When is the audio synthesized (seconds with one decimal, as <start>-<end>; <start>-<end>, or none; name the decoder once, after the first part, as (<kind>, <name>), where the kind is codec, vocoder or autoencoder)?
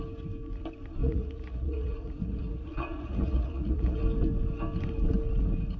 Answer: 1.0-4.0 (vocoder, Vocos)